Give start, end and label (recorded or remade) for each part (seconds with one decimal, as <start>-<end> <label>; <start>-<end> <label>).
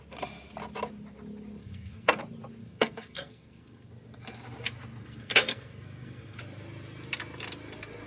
0.0-1.6 recorded; 1.6-2.2 remade; 2.2-2.6 recorded; 2.6-3.9 remade; 3.9-5.0 recorded; 5.0-6.4 remade; 6.4-8.1 recorded